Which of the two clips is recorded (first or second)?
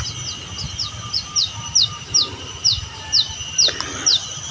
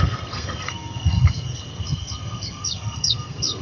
first